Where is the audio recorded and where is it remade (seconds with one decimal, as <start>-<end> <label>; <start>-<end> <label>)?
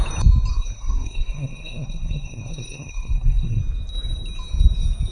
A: 0.0-0.5 recorded; 0.5-3.6 remade; 3.6-5.1 recorded